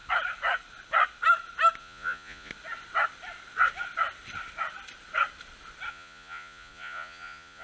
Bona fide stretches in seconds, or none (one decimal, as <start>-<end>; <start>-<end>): 0.0-1.8; 2.5-5.9